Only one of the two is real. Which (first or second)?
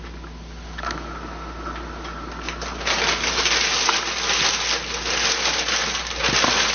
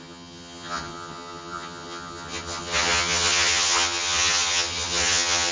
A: first